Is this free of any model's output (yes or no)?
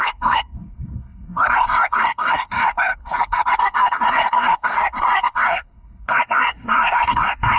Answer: no